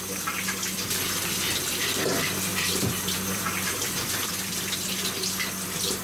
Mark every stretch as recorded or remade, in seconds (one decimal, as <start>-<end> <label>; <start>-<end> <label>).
0.0-2.5 recorded; 2.5-4.3 remade; 4.3-6.0 recorded